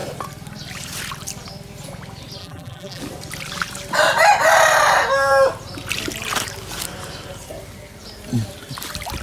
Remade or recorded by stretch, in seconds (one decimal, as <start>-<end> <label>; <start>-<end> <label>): 0.0-2.4 recorded; 2.4-3.0 remade; 3.0-9.2 recorded